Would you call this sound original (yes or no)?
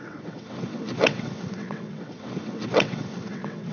no